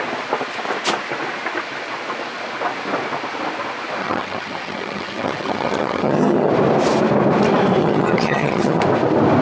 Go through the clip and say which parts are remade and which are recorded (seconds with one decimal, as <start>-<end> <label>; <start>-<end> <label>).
0.0-4.0 recorded; 4.0-6.5 remade; 6.5-7.8 recorded; 7.8-8.8 remade; 8.8-9.4 recorded